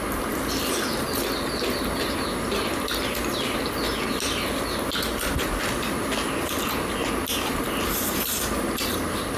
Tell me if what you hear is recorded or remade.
recorded